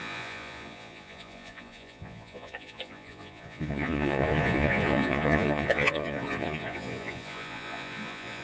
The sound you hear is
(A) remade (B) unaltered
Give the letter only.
A